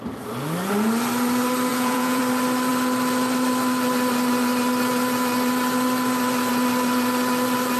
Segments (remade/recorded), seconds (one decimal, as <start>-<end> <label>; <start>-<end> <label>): 0.0-1.7 recorded; 1.7-2.2 remade; 2.2-7.8 recorded